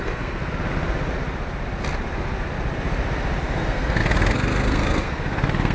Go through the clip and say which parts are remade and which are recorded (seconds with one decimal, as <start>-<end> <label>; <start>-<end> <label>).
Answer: 0.0-0.4 remade; 0.4-3.4 recorded; 3.4-5.7 remade